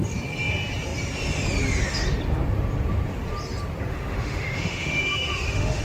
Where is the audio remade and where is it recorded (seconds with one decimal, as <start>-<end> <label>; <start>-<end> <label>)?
0.0-3.9 recorded; 3.9-5.8 remade